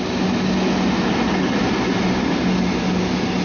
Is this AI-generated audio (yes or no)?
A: no